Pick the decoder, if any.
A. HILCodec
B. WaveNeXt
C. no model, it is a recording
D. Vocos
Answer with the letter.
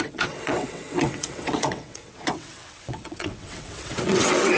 B